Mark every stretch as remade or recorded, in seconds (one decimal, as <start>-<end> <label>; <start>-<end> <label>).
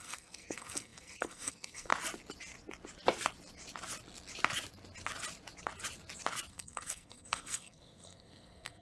0.0-1.9 remade; 1.9-6.5 recorded; 6.5-8.8 remade